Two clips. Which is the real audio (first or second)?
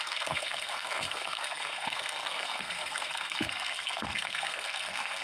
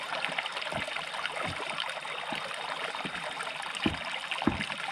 second